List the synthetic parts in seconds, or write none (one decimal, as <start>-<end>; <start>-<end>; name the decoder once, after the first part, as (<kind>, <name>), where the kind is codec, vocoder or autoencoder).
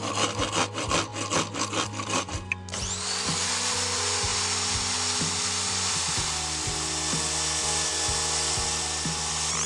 none